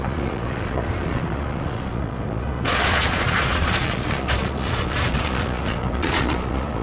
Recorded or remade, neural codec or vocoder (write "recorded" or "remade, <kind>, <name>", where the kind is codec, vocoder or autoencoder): remade, vocoder, Vocos